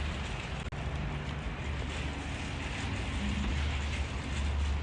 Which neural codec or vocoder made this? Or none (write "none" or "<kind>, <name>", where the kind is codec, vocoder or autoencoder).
none